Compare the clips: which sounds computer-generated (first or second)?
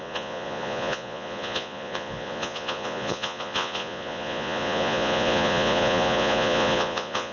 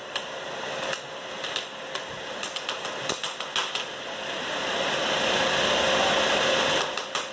first